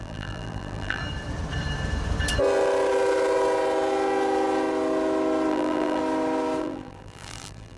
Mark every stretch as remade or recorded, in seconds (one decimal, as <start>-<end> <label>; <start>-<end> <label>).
0.0-1.0 remade; 1.0-5.5 recorded; 5.5-6.0 remade; 6.0-6.6 recorded; 6.6-7.8 remade